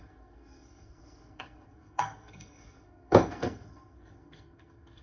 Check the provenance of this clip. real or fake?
fake